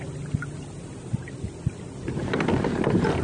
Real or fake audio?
real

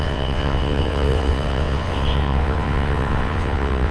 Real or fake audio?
fake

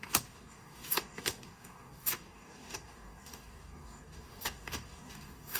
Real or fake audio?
fake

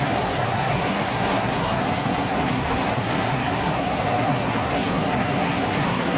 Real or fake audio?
fake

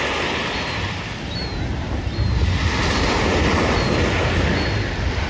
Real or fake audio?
real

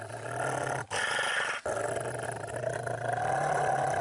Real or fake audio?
real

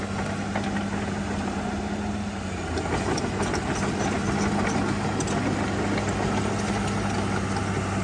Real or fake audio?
real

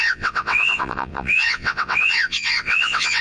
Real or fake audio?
fake